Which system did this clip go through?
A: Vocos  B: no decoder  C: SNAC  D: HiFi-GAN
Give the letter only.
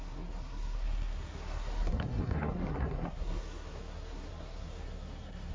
C